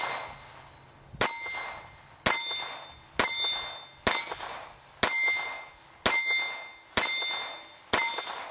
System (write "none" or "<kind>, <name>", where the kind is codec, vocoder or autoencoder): none